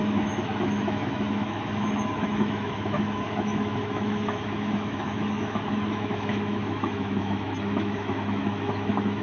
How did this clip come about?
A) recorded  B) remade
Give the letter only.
B